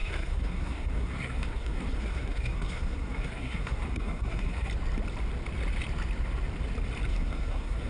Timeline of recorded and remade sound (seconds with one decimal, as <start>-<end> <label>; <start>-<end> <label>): 0.0-4.7 remade; 4.7-7.1 recorded; 7.1-7.9 remade